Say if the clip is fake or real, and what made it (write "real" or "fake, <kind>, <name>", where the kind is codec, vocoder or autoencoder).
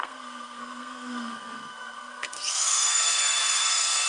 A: fake, codec, SNAC